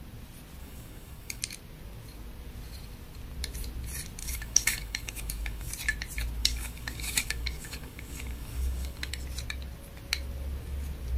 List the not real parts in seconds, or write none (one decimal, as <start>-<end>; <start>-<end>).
0.6-1.4; 4.2-5.7; 6.4-9.1